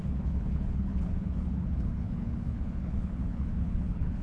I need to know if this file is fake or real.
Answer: fake